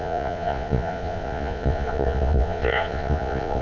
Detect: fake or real fake